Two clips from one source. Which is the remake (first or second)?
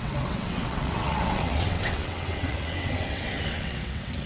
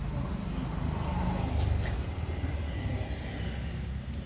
first